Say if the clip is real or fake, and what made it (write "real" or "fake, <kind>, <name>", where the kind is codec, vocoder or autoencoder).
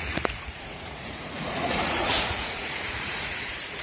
fake, vocoder, Vocos